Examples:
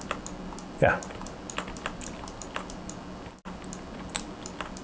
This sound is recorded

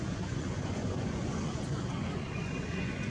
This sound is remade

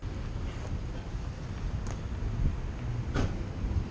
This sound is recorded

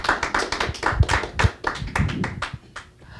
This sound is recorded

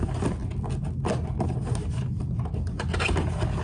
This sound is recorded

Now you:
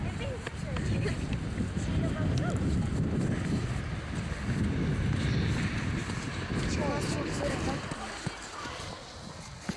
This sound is recorded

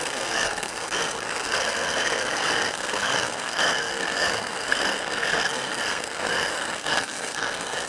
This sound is remade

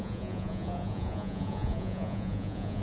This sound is remade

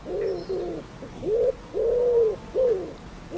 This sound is recorded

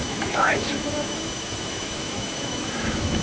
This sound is remade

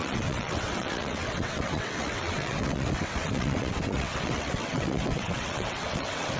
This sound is remade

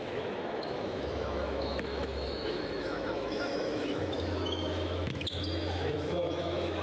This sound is remade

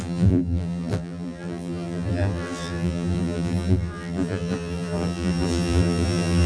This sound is remade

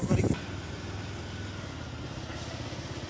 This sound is recorded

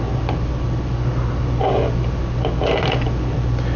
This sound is recorded